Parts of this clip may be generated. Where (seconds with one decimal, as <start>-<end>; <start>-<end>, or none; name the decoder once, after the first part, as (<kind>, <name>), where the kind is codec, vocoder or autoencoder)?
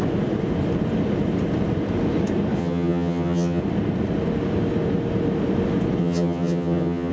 2.6-3.6 (vocoder, HiFi-GAN); 6.0-7.1